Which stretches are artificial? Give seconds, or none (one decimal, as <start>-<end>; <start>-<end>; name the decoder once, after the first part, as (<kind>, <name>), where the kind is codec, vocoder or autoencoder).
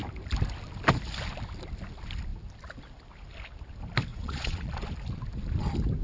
4.1-4.7 (vocoder, Vocos)